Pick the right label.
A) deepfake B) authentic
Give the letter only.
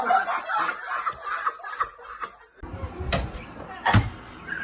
B